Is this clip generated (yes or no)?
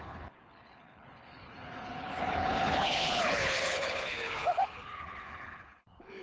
yes